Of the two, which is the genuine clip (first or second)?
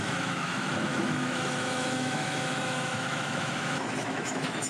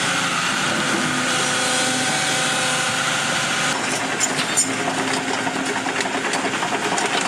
second